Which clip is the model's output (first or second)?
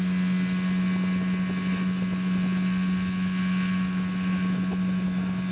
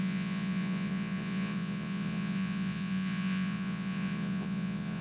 second